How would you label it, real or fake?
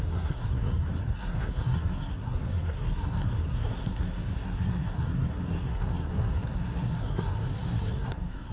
fake